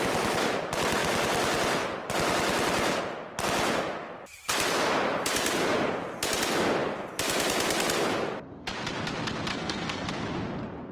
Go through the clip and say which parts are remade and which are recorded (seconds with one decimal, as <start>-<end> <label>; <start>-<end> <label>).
0.0-9.5 recorded; 9.5-10.1 remade; 10.1-10.9 recorded